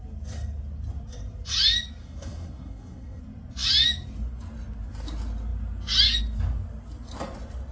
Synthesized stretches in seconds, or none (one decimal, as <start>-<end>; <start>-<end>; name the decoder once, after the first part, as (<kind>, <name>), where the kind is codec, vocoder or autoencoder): 2.0-3.2 (codec, SNAC)